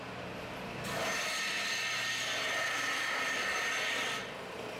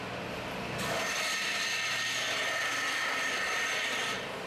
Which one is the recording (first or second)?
first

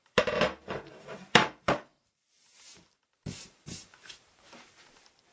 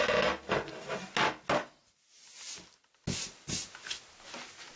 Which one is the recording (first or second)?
second